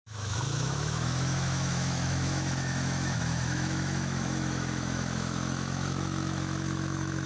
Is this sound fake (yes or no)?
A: yes